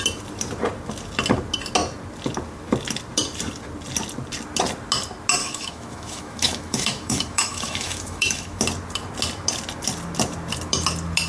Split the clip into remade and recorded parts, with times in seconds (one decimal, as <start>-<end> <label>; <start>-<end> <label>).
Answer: 0.0-5.4 recorded; 5.4-8.6 remade; 8.6-11.3 recorded

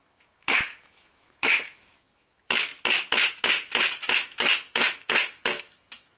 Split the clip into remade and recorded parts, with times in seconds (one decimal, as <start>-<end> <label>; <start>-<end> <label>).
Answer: 0.0-2.7 remade; 2.7-4.1 recorded; 4.1-6.2 remade

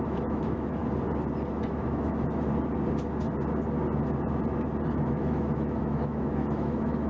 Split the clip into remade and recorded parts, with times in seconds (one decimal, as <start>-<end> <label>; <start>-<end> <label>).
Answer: 0.0-0.8 remade; 0.8-1.5 recorded; 1.5-2.5 remade; 2.5-4.9 recorded; 4.9-7.1 remade

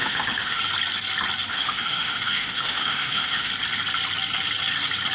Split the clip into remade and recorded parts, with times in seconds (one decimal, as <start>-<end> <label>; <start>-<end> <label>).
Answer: 0.0-0.6 remade; 0.6-1.5 recorded; 1.5-3.5 remade; 3.5-5.1 recorded

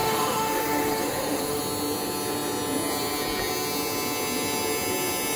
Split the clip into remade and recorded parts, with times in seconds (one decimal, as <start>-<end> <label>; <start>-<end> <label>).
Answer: 0.0-1.6 remade; 1.6-5.4 recorded

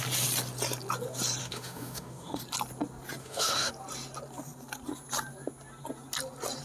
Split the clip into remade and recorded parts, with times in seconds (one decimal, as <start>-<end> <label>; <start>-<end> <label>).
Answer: 0.0-1.4 recorded; 1.4-2.4 remade; 2.4-3.2 recorded; 3.2-3.7 remade; 3.7-6.6 recorded

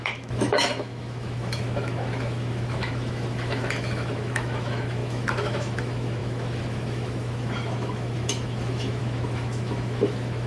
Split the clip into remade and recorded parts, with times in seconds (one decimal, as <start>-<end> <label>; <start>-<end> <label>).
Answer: 0.0-10.5 remade

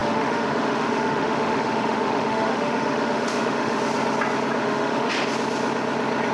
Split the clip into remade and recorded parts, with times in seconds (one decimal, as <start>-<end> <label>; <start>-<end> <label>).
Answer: 0.0-3.8 remade; 3.8-4.6 recorded; 4.6-5.1 remade; 5.1-6.3 recorded